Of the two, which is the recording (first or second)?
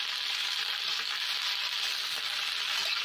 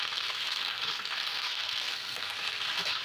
first